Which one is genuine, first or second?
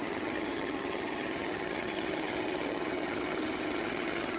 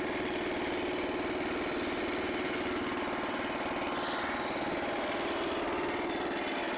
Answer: second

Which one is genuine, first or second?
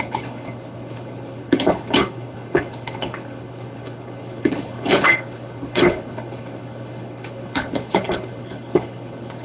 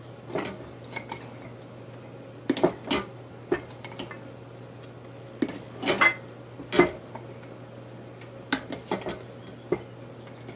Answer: second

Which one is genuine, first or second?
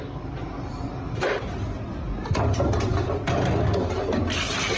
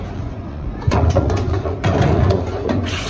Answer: first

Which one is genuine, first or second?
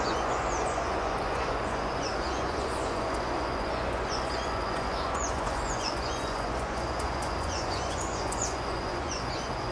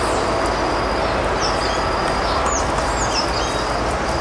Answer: second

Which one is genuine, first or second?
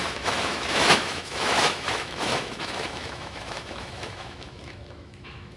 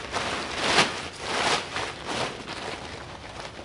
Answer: second